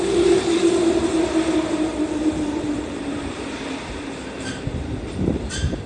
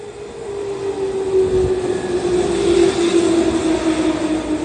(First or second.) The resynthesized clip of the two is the first